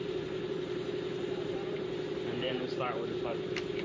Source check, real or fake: fake